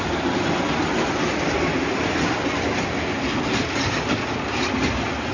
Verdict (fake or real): real